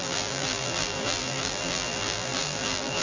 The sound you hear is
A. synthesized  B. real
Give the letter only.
A